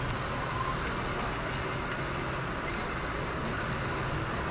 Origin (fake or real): real